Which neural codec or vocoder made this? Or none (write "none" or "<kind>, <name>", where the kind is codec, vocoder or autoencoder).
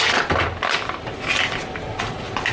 none